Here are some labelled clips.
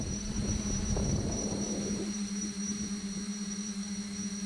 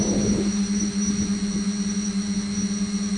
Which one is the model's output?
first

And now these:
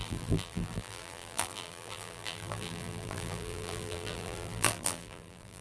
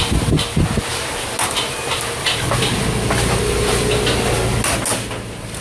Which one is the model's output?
first